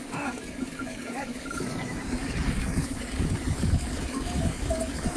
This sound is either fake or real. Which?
fake